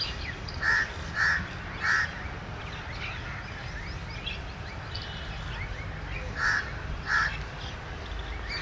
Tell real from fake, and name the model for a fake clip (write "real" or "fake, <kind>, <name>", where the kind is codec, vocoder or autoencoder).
real